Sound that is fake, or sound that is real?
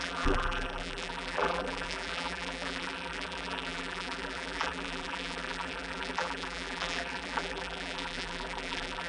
fake